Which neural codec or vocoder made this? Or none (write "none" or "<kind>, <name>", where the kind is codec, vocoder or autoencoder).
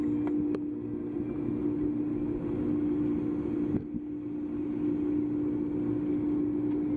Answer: none